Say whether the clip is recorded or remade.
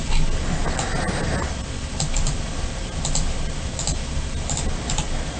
recorded